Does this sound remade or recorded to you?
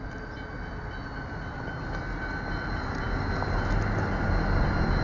recorded